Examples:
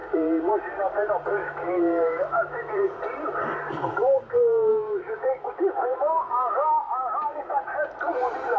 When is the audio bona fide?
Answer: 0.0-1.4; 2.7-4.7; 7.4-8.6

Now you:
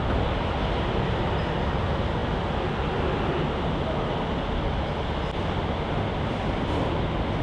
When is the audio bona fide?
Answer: 0.0-7.4

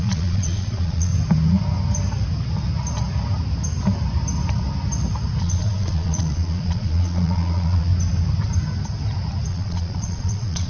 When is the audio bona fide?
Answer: 1.1-5.4; 7.9-9.5

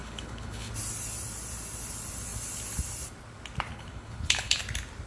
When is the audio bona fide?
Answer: 0.7-3.7; 4.6-5.1

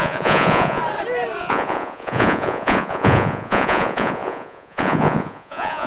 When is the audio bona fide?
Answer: 0.8-1.4

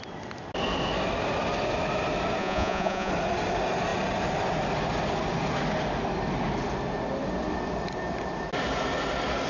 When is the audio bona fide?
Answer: 0.0-2.4; 3.1-9.5